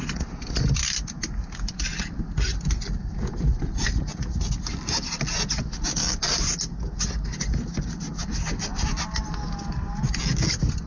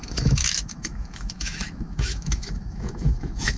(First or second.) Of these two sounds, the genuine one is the first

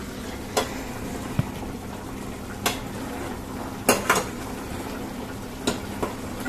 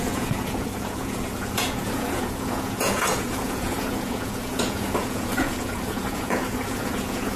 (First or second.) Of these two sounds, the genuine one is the first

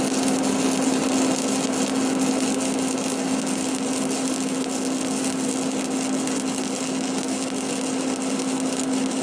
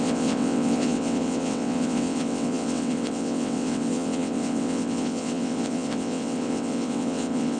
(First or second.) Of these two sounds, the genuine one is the first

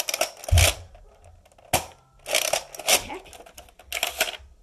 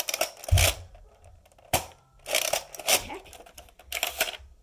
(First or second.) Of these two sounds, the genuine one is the first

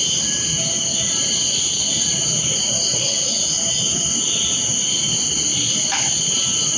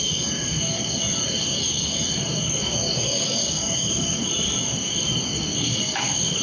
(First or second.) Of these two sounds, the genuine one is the first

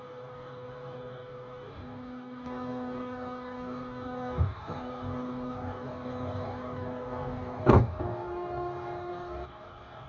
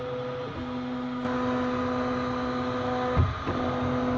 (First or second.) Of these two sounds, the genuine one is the second